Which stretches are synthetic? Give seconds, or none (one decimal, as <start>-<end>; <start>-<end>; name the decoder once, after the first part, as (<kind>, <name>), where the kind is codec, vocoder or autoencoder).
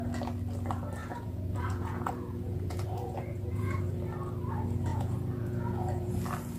1.0-3.8 (vocoder, Vocos); 4.9-6.1